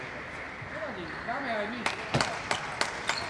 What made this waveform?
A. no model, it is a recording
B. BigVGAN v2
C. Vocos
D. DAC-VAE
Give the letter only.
A